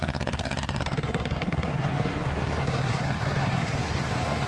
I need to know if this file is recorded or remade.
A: remade